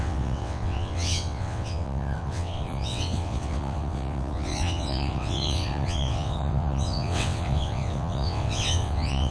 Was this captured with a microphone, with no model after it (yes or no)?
no